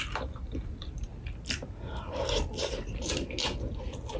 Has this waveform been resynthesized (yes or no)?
no